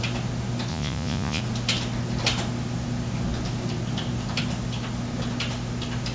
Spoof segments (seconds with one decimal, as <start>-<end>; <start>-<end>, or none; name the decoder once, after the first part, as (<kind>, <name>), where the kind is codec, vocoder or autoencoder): 0.7-1.4 (vocoder, Vocos)